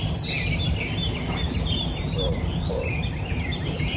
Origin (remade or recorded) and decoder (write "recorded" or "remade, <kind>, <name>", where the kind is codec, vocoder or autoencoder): recorded